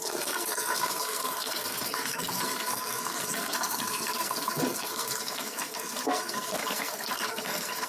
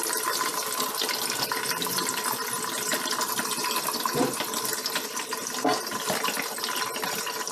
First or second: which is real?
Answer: second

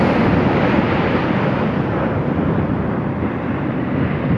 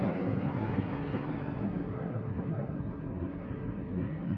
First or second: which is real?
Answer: first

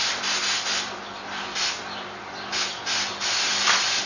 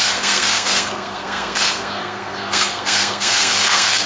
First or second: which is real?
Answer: first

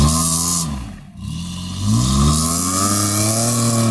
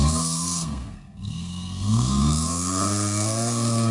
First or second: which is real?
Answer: first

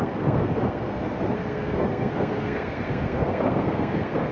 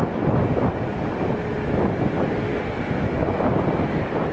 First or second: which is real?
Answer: second